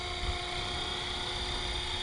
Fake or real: real